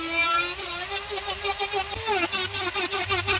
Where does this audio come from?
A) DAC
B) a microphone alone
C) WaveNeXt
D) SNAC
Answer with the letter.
B